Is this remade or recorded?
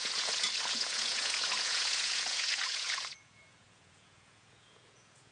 remade